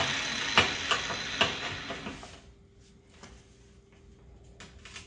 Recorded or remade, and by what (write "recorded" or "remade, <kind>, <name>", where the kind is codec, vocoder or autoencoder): recorded